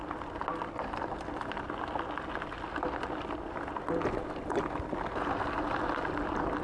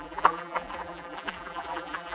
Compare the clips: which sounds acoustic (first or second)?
first